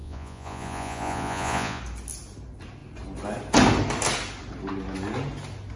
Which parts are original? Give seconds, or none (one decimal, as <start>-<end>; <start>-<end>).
1.8-5.8